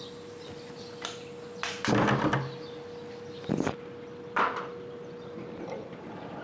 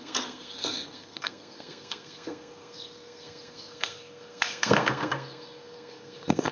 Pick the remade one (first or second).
second